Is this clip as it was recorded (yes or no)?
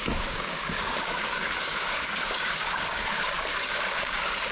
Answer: no